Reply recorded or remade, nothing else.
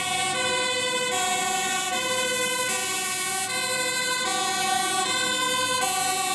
recorded